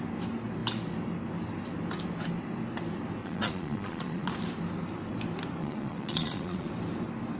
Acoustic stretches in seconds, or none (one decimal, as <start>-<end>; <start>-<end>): 0.0-3.2; 4.3-5.6; 6.7-7.4